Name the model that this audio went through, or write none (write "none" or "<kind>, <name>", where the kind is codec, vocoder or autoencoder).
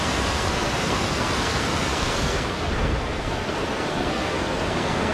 codec, SNAC